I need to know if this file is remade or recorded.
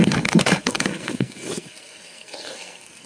remade